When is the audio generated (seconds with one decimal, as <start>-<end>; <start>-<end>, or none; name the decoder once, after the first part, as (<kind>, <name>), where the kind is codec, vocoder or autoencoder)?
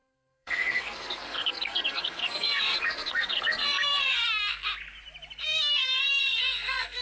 0.0-4.7 (codec, SNAC); 5.4-7.0